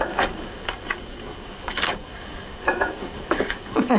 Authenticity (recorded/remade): remade